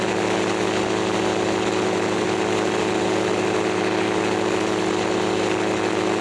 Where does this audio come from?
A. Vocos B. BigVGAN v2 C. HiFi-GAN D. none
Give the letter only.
D